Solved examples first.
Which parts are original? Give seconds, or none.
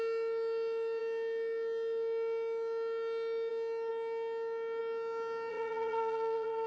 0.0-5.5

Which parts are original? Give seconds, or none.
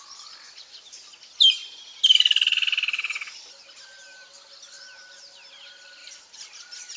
0.0-6.0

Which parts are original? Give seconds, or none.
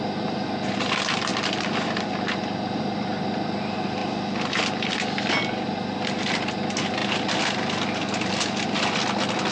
0.0-1.3; 2.8-4.0; 4.9-9.5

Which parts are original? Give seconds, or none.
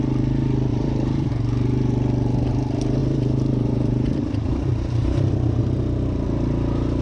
0.0-0.7; 1.3-3.0; 5.6-7.0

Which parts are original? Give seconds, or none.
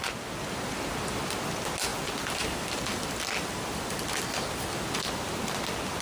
0.0-1.9; 5.5-6.0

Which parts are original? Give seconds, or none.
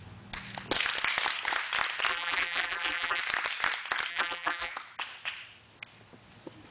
0.0-2.1; 3.2-4.1; 4.7-6.7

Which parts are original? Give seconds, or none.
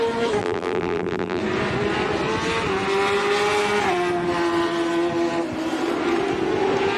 0.0-0.4; 1.4-7.0